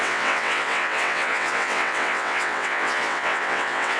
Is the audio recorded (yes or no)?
no